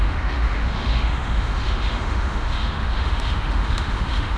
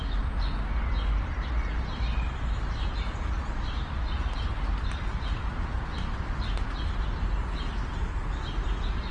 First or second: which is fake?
first